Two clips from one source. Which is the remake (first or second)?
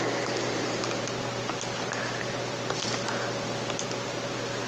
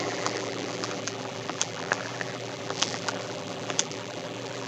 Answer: second